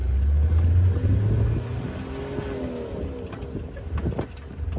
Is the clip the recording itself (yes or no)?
yes